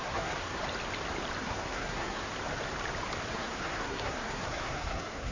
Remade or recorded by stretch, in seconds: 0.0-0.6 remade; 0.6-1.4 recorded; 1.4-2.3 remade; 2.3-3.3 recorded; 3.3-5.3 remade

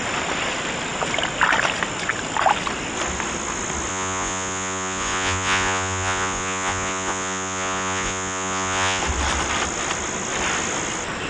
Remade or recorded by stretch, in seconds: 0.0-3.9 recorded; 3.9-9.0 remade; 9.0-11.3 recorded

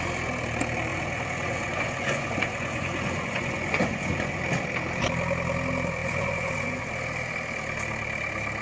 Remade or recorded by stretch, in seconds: 0.0-0.9 recorded; 0.9-4.4 remade; 4.4-6.0 recorded; 6.0-6.9 remade; 6.9-8.6 recorded

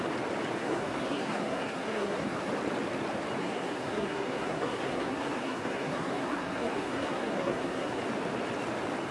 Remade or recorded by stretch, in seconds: 0.0-0.6 recorded; 0.6-2.5 remade; 2.5-3.4 recorded; 3.4-8.0 remade; 8.0-9.1 recorded

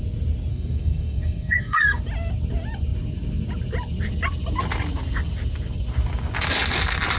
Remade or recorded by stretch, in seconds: 0.0-0.5 recorded; 0.5-2.0 remade; 2.0-7.2 recorded